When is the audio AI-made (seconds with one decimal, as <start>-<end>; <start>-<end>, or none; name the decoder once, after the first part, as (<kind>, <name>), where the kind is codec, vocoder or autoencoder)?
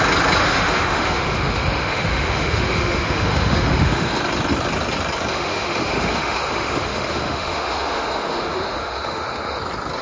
0.4-4.2 (autoencoder, DAC-VAE); 5.3-9.6